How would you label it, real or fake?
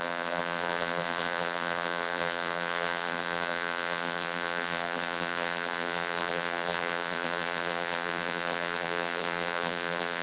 fake